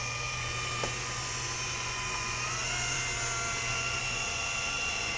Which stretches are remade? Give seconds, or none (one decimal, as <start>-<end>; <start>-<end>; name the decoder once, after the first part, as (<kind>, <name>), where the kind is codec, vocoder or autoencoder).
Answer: 0.0-3.1 (vocoder, Vocos); 3.7-5.2